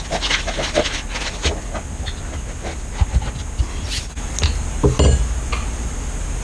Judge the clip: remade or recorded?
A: recorded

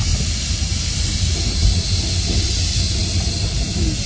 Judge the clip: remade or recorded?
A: recorded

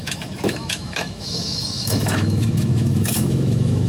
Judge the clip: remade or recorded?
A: remade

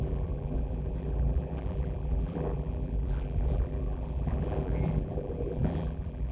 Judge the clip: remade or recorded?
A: remade